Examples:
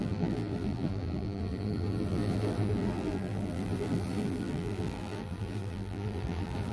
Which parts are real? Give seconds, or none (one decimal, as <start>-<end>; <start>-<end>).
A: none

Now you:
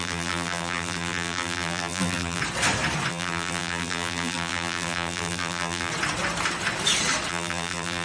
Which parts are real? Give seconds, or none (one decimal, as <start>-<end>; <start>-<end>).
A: 2.4-3.1; 5.9-7.3

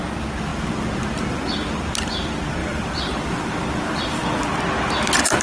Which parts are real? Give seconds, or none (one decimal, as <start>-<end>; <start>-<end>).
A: 0.0-2.6; 4.6-5.4